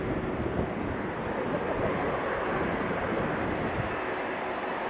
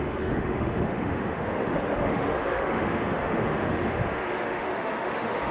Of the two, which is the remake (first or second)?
second